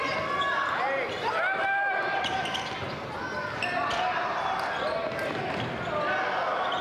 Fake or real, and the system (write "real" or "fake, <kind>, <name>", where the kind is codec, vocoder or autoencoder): real